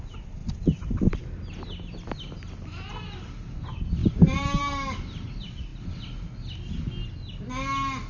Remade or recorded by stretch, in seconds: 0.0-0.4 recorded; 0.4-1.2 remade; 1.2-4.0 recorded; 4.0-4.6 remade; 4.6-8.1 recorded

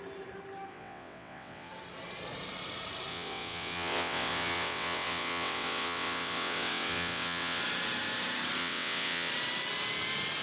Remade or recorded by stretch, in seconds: 0.0-0.7 recorded; 0.7-1.7 remade; 1.7-3.1 recorded; 3.1-7.6 remade; 7.6-8.6 recorded; 8.6-9.3 remade; 9.3-10.4 recorded

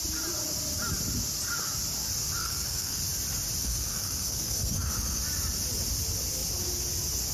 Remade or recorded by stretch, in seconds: 0.0-2.4 recorded; 2.4-3.0 remade; 3.0-3.6 recorded; 3.6-5.2 remade; 5.2-7.3 recorded

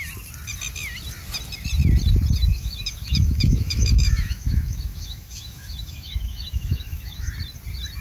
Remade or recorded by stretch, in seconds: 0.0-2.5 recorded; 2.5-7.3 remade; 7.3-8.0 recorded